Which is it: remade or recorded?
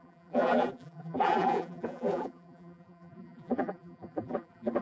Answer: remade